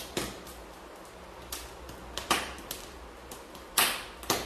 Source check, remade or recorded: recorded